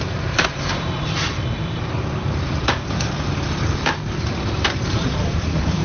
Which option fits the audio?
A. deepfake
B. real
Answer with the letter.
A